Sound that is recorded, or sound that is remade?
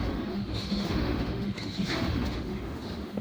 remade